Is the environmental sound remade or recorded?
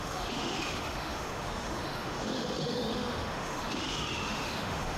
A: remade